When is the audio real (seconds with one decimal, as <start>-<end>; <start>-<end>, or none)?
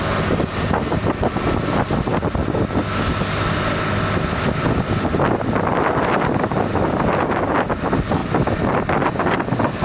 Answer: 0.0-9.8